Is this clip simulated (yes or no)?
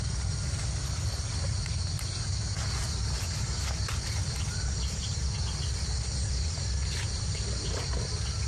no